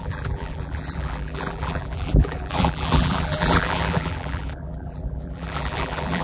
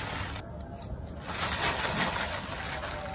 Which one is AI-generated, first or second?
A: first